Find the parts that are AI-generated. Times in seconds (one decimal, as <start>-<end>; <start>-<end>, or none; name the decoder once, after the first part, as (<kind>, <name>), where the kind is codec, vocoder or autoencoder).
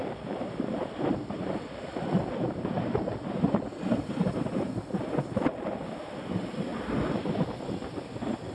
0.0-3.0 (vocoder, BigVGAN v2)